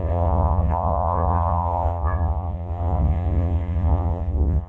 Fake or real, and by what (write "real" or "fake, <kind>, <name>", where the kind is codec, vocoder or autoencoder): fake, vocoder, Vocos